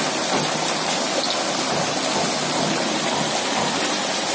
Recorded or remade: recorded